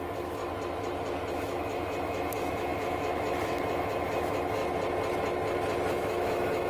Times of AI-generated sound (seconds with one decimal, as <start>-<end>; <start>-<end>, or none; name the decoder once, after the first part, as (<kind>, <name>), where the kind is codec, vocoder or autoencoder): 0.0-0.4 (autoencoder, DAC-VAE); 1.3-4.6; 5.9-6.7

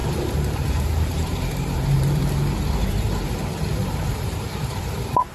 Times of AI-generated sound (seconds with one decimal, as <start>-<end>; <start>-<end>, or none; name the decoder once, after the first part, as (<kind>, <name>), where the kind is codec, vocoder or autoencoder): 0.0-2.2 (vocoder, BigVGAN v2); 2.8-5.3

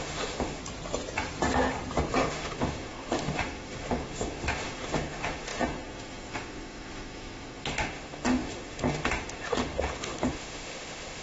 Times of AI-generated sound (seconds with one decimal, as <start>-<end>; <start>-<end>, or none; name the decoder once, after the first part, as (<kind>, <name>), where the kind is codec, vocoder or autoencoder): 0.0-0.6 (autoencoder, DAC-VAE); 2.1-11.2

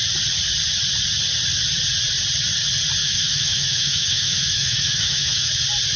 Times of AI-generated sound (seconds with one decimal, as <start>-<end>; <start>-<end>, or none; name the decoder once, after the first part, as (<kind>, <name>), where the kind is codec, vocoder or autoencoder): 3.0-5.5 (autoencoder, DAC-VAE)

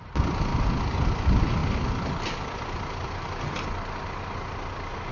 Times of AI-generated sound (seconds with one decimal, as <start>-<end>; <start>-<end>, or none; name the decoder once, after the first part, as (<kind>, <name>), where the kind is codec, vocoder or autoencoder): none